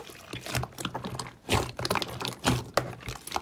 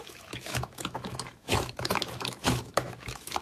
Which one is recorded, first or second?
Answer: first